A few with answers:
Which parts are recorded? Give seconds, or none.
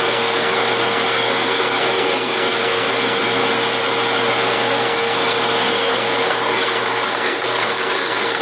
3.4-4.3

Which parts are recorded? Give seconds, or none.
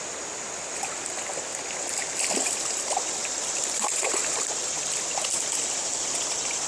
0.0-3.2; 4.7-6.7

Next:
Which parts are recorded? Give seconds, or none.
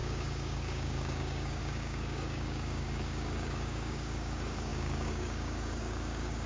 none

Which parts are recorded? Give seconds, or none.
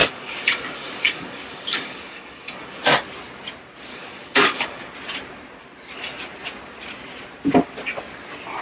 2.9-3.9; 4.9-8.6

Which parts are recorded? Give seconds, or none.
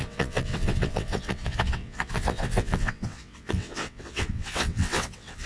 none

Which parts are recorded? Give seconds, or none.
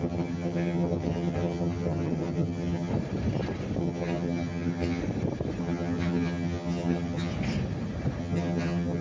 2.9-3.8; 5.0-5.6; 7.3-8.2